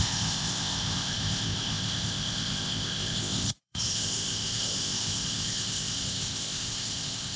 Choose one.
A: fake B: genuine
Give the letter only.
A